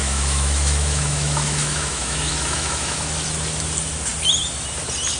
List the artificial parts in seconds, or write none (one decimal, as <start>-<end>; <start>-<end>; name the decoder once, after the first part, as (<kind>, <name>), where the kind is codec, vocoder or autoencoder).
0.0-3.1 (autoencoder, DAC-VAE)

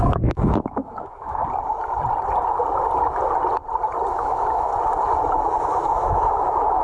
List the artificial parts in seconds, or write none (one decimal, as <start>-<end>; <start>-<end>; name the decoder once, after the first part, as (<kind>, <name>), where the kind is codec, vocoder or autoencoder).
0.0-1.4 (autoencoder, DAC-VAE); 4.1-4.7; 5.6-6.8

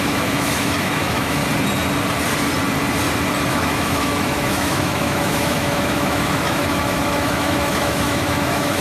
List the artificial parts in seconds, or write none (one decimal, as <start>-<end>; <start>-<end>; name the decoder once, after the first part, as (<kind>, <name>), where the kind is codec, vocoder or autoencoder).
0.0-1.4 (autoencoder, DAC-VAE); 3.5-8.8

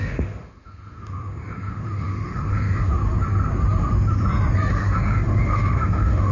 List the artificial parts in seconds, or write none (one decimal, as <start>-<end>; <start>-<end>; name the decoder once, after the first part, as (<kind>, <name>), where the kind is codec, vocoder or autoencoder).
0.0-2.9 (autoencoder, DAC-VAE); 4.7-6.3

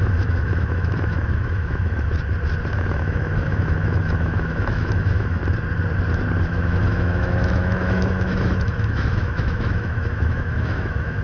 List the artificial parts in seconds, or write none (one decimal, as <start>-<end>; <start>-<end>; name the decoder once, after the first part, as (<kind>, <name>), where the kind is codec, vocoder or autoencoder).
0.0-2.1 (autoencoder, DAC-VAE); 2.7-5.4; 6.4-11.2

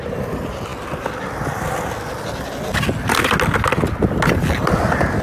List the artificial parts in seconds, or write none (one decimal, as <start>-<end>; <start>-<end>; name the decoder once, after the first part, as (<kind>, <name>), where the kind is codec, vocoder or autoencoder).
none